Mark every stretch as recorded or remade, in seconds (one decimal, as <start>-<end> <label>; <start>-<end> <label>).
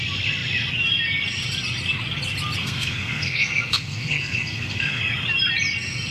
0.0-2.6 recorded; 2.6-5.0 remade; 5.0-6.1 recorded